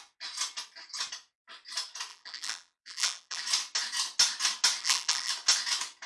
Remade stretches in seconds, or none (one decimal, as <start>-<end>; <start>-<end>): 2.1-3.4; 4.8-5.3